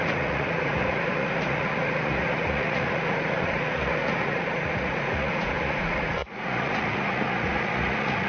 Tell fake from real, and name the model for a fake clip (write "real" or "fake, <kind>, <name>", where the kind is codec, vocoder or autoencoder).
fake, vocoder, Vocos